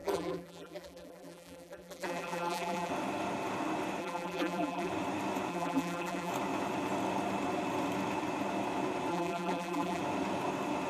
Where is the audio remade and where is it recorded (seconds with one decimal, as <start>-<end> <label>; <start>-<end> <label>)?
0.0-2.9 remade; 2.9-4.0 recorded; 4.0-4.9 remade; 4.9-5.5 recorded; 5.5-6.3 remade; 6.3-9.1 recorded; 9.1-10.0 remade; 10.0-10.9 recorded